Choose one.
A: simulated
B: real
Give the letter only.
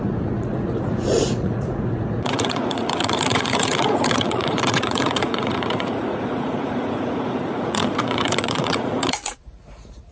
A